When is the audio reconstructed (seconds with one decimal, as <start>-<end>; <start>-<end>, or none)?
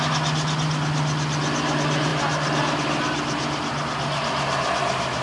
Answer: none